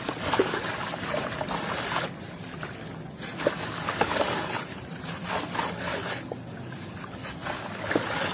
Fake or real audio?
real